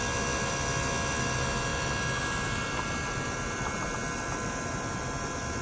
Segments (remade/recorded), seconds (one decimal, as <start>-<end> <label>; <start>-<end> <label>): 0.0-5.6 recorded